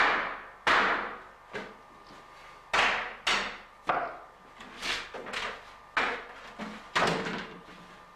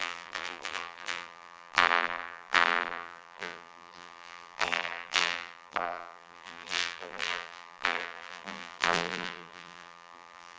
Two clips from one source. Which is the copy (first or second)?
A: second